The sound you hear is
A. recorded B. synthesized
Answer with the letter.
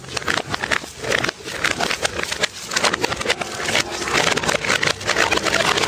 A